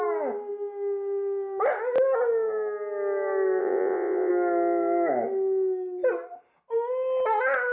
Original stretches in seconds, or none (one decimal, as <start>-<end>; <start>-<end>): 0.0-3.6; 4.3-7.7